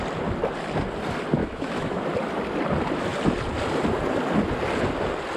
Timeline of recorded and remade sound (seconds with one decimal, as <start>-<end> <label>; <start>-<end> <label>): 0.0-1.4 recorded; 1.4-2.0 remade; 2.0-5.4 recorded